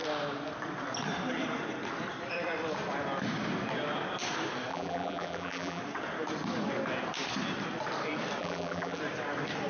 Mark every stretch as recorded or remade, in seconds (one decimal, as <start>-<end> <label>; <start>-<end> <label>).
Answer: 0.0-4.7 recorded; 4.7-5.8 remade; 5.8-8.4 recorded; 8.4-9.0 remade; 9.0-9.7 recorded